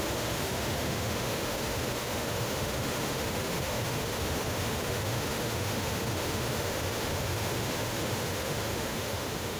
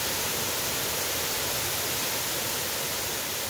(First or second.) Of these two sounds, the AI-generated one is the first